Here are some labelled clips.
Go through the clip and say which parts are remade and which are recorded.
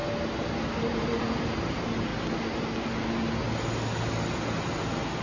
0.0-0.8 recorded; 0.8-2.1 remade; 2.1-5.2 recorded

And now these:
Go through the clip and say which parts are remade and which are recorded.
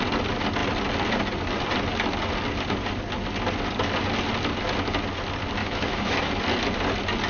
0.0-5.6 recorded; 5.6-6.3 remade; 6.3-7.3 recorded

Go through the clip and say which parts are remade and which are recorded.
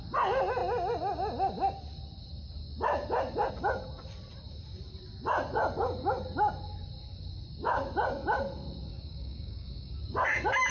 0.0-8.9 recorded; 8.9-10.0 remade; 10.0-10.7 recorded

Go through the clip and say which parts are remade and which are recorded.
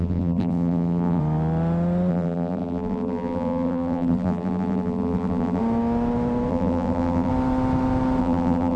0.0-1.2 remade; 1.2-2.1 recorded; 2.1-5.6 remade; 5.6-6.5 recorded; 6.5-7.3 remade; 7.3-8.2 recorded; 8.2-8.8 remade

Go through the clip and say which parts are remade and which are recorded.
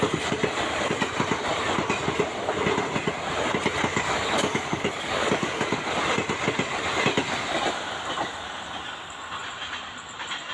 0.0-3.9 recorded; 3.9-5.9 remade; 5.9-10.5 recorded